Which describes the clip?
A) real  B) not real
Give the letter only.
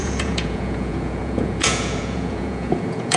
B